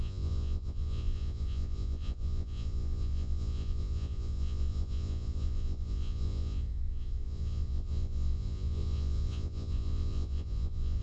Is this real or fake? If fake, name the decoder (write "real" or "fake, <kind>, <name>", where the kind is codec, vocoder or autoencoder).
fake, vocoder, Vocos